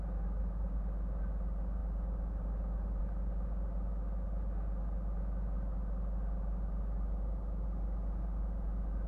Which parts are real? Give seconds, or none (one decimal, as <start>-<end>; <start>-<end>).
0.0-9.1